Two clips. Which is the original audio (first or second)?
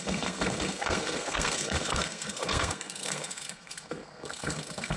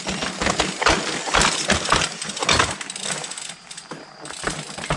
second